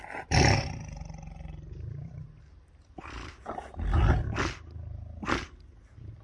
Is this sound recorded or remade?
recorded